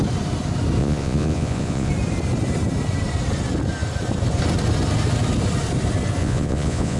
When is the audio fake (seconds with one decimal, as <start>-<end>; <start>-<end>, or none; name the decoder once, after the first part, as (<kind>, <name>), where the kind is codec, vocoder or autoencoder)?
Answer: 0.8-1.9 (vocoder, Vocos); 6.2-7.0